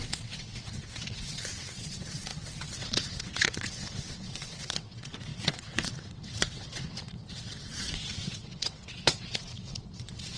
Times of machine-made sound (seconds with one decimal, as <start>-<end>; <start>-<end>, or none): 0.0-10.4